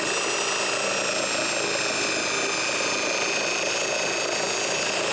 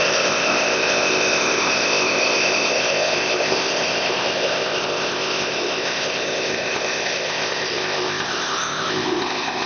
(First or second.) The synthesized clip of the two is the second